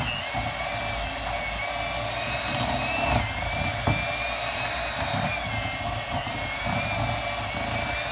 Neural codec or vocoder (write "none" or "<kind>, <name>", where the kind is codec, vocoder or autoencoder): none